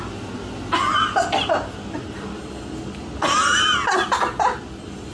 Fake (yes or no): no